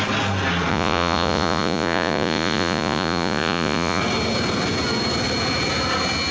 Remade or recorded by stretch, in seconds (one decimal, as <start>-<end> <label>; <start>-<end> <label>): 0.0-0.7 recorded; 0.7-4.0 remade; 4.0-6.3 recorded

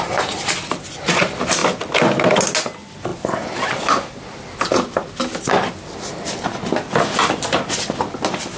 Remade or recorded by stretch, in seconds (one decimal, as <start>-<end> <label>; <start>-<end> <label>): 0.0-8.6 recorded

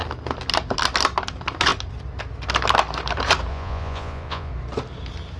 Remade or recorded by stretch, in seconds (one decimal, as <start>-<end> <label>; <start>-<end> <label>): 0.0-3.5 recorded; 3.5-4.5 remade; 4.5-5.4 recorded